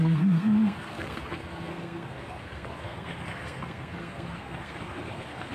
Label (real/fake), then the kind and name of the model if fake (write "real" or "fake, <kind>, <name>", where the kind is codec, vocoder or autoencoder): fake, codec, SNAC